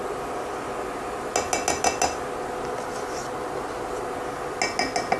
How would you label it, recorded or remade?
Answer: recorded